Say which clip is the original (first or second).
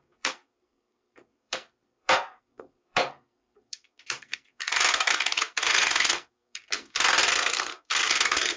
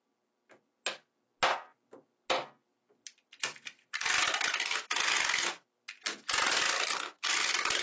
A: second